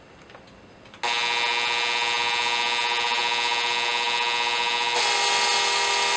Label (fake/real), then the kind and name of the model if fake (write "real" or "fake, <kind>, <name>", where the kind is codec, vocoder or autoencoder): real